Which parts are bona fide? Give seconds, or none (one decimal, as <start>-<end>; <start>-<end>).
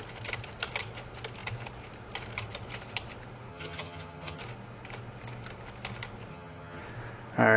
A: 0.0-3.5; 4.4-6.3; 6.8-7.6